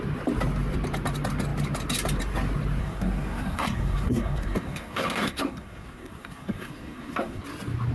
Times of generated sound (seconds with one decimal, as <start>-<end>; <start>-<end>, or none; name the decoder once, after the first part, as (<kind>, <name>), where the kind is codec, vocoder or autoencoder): 2.8-7.4 (codec, SNAC)